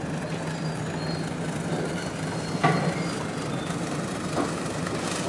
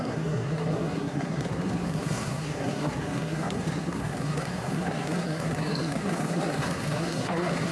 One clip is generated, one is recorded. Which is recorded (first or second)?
first